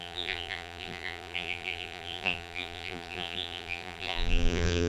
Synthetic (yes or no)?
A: yes